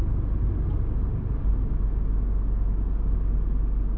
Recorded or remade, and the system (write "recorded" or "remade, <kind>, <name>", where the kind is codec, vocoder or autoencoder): recorded